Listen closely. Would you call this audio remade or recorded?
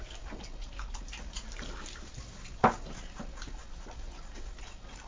recorded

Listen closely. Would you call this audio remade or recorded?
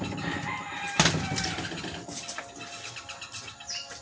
recorded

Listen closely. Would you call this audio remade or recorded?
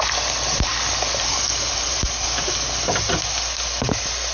recorded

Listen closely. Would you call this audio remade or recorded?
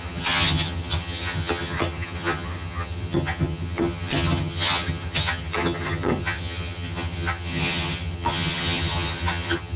remade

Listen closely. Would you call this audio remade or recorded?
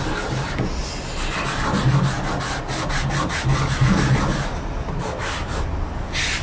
recorded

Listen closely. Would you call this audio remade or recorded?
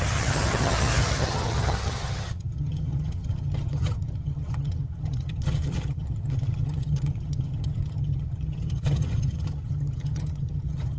remade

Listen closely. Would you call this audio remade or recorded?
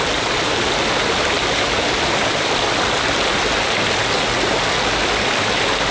recorded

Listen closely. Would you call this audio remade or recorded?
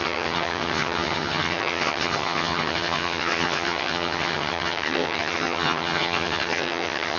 remade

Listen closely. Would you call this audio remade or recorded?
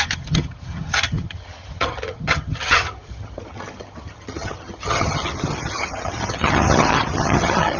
remade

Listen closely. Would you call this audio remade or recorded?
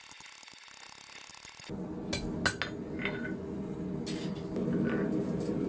recorded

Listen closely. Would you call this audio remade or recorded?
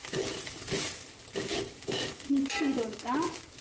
recorded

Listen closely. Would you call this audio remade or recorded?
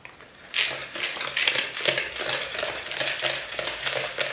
recorded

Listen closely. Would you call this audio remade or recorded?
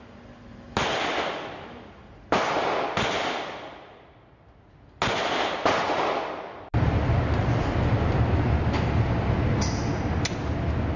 recorded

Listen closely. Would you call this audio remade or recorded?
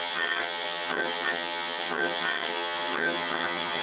remade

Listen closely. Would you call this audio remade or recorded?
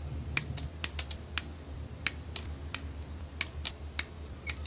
recorded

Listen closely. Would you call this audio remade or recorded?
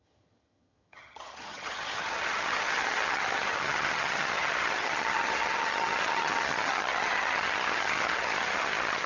remade